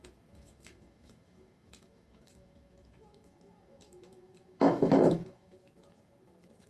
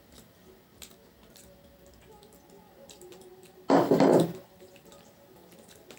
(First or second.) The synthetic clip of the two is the first